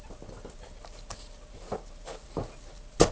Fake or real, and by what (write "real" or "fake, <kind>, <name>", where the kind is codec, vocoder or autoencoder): real